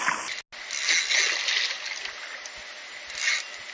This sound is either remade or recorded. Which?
recorded